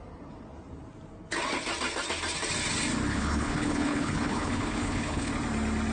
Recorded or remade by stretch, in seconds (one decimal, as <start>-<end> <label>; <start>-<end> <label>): 0.0-3.1 recorded; 3.1-5.3 remade; 5.3-5.9 recorded